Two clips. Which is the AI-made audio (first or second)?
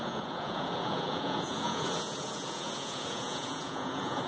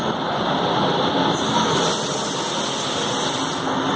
first